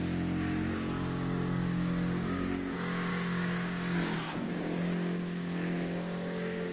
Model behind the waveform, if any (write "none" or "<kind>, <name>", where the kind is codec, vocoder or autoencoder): codec, DAC